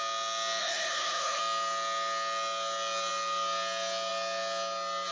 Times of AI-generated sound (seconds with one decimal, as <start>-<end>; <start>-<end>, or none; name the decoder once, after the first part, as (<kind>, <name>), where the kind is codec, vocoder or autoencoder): 0.6-1.4 (codec, HILCodec)

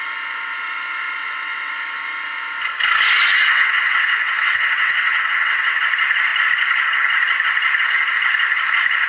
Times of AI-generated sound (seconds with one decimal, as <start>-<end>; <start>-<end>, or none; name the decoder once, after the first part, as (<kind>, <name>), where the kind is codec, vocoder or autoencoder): 1.2-1.7 (vocoder, WaveNeXt); 3.3-5.8

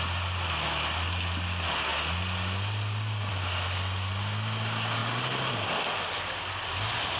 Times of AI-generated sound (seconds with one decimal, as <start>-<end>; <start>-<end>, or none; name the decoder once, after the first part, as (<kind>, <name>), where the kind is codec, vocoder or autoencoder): none

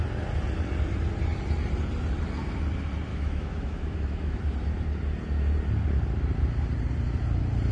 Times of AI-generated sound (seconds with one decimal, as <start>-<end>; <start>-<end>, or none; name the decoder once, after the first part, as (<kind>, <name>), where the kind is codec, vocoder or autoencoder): 3.1-4.4 (autoencoder, DAC-VAE)